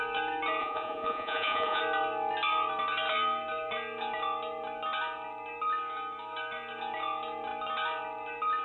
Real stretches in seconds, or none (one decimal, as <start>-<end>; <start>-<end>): 0.0-0.6; 1.8-8.6